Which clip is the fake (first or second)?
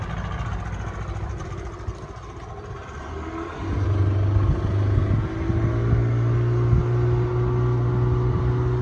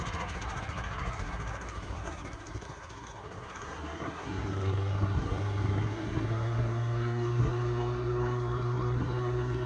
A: second